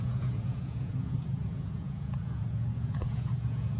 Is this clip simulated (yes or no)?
yes